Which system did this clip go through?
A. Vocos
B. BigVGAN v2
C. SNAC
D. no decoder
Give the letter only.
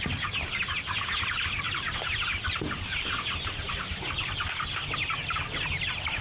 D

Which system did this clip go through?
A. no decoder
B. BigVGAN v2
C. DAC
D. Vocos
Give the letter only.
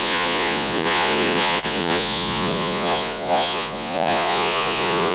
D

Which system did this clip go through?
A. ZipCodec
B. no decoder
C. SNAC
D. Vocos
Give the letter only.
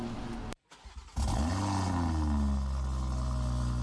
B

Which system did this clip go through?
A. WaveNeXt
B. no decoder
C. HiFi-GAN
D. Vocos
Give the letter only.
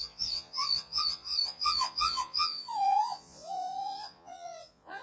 D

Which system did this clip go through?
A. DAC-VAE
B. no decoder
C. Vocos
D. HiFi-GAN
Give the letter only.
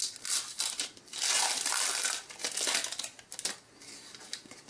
B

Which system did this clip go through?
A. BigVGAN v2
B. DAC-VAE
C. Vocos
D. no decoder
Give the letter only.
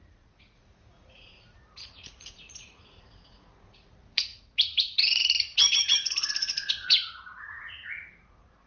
C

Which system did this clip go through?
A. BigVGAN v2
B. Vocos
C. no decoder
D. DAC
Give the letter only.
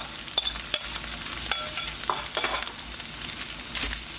C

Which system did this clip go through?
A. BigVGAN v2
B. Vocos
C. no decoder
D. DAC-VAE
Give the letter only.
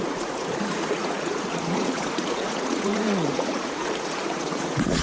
B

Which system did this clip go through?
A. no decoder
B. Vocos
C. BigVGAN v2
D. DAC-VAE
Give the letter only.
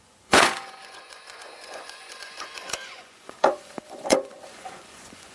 B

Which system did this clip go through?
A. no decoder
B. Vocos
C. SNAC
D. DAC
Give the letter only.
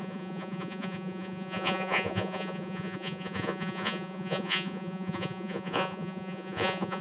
B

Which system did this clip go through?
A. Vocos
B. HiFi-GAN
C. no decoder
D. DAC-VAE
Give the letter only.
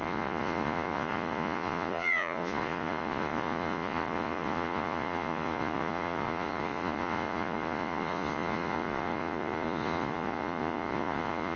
A